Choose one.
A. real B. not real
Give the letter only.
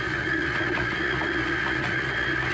B